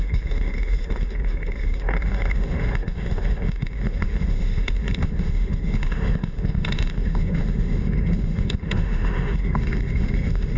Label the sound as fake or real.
fake